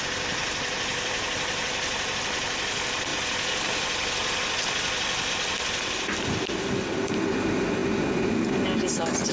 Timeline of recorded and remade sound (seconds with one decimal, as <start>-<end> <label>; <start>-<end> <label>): 0.0-9.3 recorded